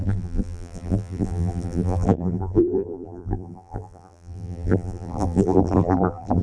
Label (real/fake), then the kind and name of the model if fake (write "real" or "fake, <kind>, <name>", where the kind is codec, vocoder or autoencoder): fake, vocoder, BigVGAN v2